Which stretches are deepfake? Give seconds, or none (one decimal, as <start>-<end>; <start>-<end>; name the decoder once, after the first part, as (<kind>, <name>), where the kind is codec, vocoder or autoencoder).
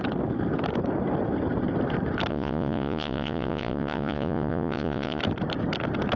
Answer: 2.3-5.2 (vocoder, Vocos)